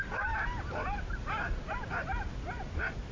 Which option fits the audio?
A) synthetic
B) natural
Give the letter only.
B